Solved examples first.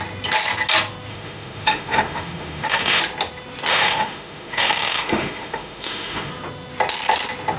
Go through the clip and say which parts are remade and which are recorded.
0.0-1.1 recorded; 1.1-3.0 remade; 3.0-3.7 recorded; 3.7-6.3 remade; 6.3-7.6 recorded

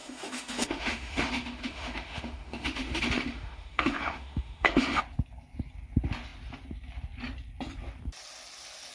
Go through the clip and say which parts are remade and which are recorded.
0.0-5.0 remade; 5.0-8.9 recorded

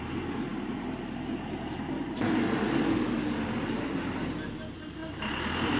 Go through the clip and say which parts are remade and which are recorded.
0.0-5.8 recorded

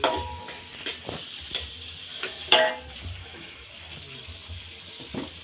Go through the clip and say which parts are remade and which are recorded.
0.0-2.1 recorded; 2.1-2.7 remade; 2.7-3.2 recorded; 3.2-3.7 remade; 3.7-5.4 recorded

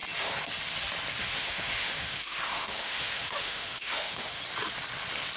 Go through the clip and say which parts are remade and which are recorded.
0.0-1.2 recorded; 1.2-4.4 remade; 4.4-5.4 recorded

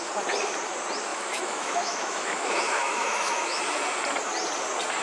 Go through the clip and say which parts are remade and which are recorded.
0.0-1.1 recorded; 1.1-3.6 remade; 3.6-5.0 recorded

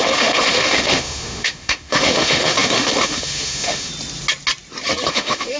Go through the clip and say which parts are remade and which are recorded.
0.0-3.9 remade; 3.9-5.1 recorded; 5.1-5.6 remade

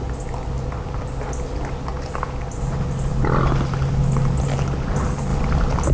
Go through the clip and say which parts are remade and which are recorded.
0.0-5.9 recorded